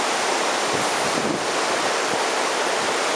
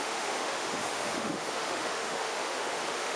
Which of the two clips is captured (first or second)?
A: first